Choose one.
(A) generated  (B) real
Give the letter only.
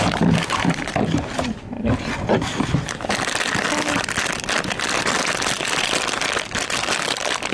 A